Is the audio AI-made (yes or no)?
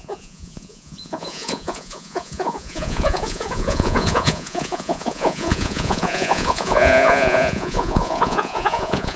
yes